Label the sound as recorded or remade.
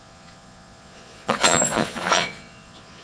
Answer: remade